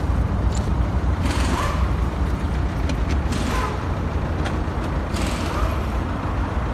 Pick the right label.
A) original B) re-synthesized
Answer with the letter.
B